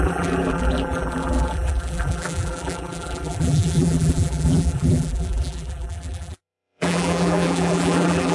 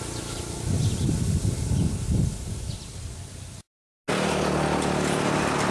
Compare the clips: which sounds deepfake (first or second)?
first